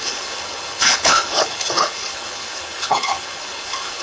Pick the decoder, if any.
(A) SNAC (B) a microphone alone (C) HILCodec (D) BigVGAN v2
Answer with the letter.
C